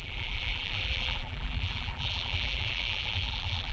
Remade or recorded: remade